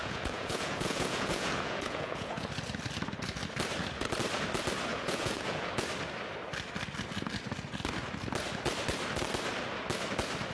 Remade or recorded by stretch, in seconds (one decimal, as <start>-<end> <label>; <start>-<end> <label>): 0.0-2.5 remade; 2.5-4.9 recorded; 4.9-5.7 remade; 5.7-10.5 recorded